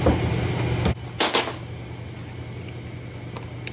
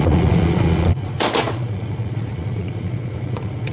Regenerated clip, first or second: second